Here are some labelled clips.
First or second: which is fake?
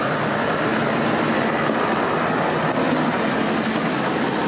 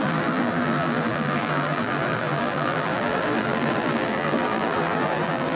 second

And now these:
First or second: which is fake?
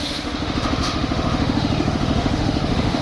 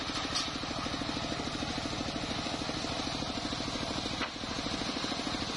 first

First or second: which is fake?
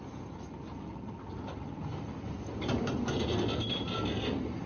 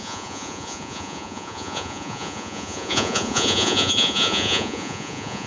second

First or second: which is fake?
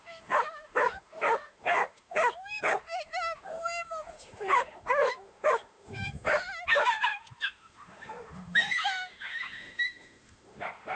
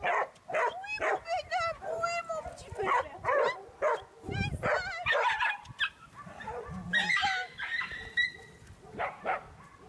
first